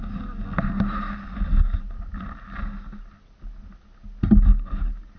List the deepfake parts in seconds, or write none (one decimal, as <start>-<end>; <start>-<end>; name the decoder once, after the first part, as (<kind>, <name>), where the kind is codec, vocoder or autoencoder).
none

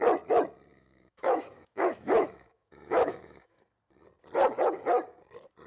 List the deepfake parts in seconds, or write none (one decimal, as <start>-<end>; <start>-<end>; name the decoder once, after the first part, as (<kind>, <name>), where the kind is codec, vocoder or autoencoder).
0.7-3.6 (autoencoder, DAC-VAE)

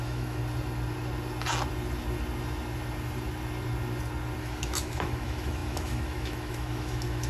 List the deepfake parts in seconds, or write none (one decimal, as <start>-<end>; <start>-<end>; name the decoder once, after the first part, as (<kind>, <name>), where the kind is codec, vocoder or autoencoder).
0.0-0.4 (autoencoder, DAC-VAE); 4.4-7.3

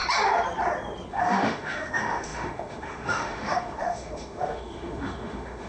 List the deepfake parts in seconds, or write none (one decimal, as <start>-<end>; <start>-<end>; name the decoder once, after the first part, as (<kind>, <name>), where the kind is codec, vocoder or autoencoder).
1.1-5.7 (autoencoder, DAC-VAE)

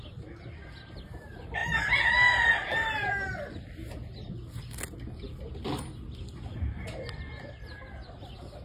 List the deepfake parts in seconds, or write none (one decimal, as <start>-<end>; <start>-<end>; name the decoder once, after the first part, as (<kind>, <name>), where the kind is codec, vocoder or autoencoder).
none

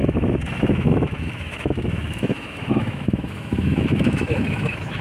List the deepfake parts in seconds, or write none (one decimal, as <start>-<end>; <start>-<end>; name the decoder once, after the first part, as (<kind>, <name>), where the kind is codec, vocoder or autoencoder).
0.0-5.0 (autoencoder, DAC-VAE)

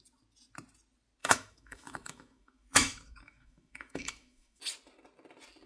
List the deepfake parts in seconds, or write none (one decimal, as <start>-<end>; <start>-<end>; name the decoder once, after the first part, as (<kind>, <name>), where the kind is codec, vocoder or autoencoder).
1.2-4.6 (autoencoder, DAC-VAE)

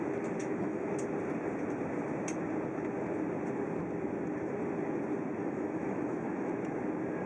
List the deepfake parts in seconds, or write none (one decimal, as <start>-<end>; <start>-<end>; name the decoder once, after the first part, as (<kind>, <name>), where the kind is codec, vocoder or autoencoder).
0.4-0.9 (autoencoder, DAC-VAE); 5.4-6.5